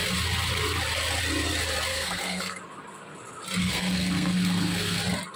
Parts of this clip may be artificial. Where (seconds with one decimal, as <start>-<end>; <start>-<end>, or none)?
1.9-2.6; 3.6-5.0